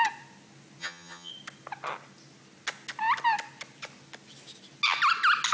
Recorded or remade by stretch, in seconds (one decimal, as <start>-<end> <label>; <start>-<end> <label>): 0.0-0.8 recorded; 0.8-1.3 remade; 1.3-5.5 recorded